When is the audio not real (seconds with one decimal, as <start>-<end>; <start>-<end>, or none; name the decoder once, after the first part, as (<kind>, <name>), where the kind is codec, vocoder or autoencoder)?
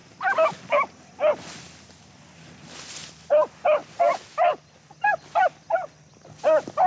none